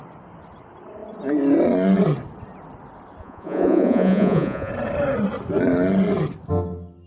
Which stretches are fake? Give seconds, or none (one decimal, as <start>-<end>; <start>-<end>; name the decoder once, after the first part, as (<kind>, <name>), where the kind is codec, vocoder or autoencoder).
3.2-4.7 (vocoder, Vocos)